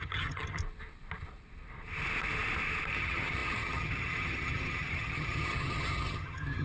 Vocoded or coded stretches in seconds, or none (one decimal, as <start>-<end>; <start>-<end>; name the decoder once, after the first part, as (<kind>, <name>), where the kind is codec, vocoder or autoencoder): 0.0-0.6 (vocoder, HiFi-GAN); 2.9-6.6